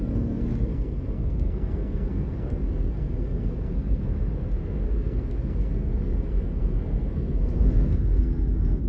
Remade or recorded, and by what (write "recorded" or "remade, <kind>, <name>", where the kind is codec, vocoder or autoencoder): remade, codec, SNAC